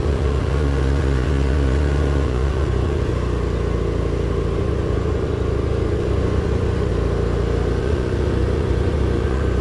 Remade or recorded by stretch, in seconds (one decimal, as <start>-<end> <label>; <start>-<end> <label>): 0.0-3.1 remade; 3.1-4.6 recorded; 4.6-6.9 remade; 6.9-7.8 recorded; 7.8-9.6 remade